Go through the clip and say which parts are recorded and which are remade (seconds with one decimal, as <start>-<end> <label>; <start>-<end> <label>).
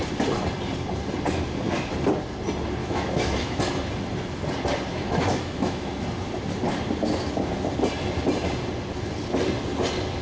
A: 0.0-2.8 recorded; 2.8-3.6 remade; 3.6-4.9 recorded; 4.9-5.9 remade; 5.9-10.2 recorded